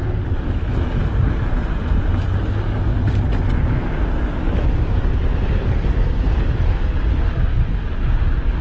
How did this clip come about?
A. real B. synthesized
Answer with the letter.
A